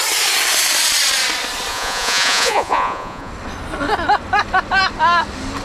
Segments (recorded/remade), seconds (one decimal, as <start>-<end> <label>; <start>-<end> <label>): 0.0-1.7 recorded; 1.7-3.3 remade; 3.3-5.6 recorded